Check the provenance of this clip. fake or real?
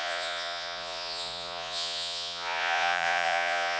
fake